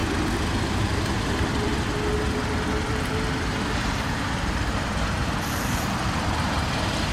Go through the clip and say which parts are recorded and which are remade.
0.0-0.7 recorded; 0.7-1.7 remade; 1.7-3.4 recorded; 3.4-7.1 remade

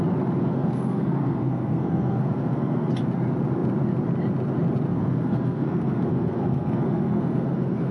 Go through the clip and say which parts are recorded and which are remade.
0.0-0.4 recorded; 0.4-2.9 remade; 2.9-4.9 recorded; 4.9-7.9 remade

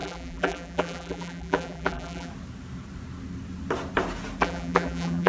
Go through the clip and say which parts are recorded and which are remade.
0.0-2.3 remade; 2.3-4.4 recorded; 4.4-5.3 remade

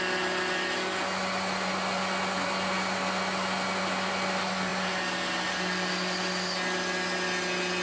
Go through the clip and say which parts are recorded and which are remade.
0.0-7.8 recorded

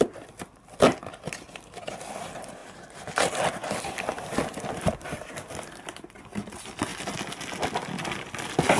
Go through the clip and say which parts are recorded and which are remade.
0.0-2.6 recorded; 2.6-6.2 remade; 6.2-8.8 recorded